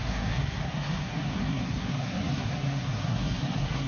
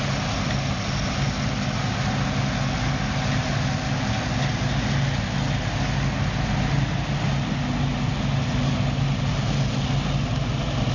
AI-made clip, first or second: first